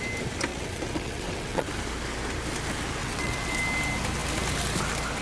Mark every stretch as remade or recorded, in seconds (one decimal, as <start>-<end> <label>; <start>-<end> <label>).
0.0-0.5 recorded; 0.5-1.7 remade; 1.7-3.0 recorded; 3.0-3.6 remade; 3.6-5.2 recorded